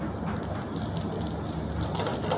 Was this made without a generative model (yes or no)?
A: yes